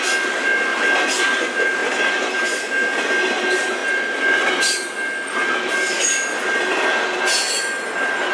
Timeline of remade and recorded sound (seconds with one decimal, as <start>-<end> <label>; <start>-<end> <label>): 0.0-8.3 recorded